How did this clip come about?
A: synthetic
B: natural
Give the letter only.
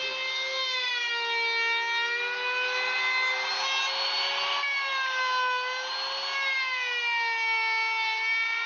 B